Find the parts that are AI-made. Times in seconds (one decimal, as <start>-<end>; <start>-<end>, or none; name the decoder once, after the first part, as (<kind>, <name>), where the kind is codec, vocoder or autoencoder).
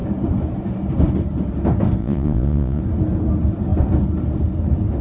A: 2.0-2.8 (vocoder, Vocos)